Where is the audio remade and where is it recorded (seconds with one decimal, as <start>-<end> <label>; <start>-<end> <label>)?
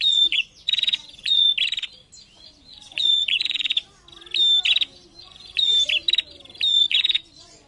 0.0-1.5 remade; 1.5-2.3 recorded; 2.3-3.8 remade; 3.8-5.2 recorded; 5.2-5.7 remade; 5.7-6.7 recorded; 6.7-7.7 remade